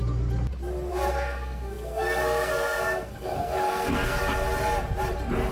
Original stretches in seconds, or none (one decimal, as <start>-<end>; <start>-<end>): 0.0-0.9; 4.2-5.5